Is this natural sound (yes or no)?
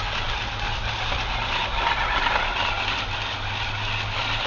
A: yes